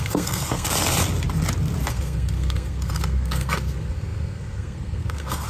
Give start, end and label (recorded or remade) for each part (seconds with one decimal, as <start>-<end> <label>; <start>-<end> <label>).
0.0-0.7 remade; 0.7-1.9 recorded; 1.9-5.5 remade